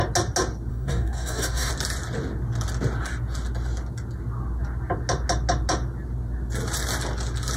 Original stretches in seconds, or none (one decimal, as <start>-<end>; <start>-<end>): 0.0-0.7; 1.7-7.6